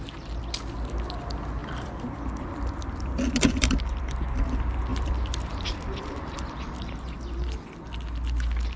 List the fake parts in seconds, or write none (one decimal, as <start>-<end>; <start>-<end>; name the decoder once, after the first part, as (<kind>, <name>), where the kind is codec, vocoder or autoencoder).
1.6-4.0 (vocoder, BigVGAN v2); 4.9-6.4